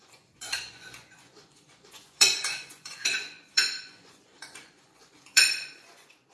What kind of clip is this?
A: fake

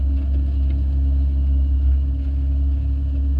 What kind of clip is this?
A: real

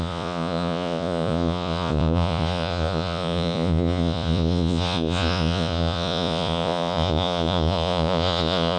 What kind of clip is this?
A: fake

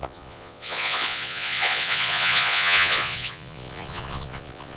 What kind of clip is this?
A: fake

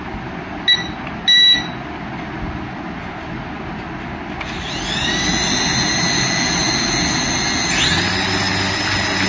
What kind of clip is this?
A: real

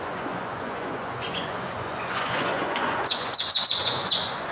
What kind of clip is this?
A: fake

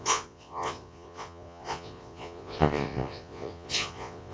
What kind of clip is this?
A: fake